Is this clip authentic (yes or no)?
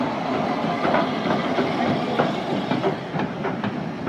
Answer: yes